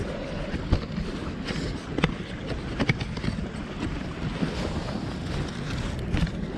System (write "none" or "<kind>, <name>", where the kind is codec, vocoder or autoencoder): none